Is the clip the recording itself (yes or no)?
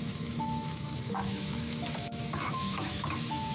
no